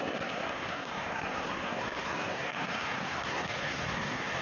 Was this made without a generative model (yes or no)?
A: no